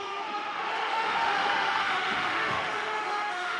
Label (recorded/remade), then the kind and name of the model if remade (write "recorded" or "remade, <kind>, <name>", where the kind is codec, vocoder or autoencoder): remade, autoencoder, DAC-VAE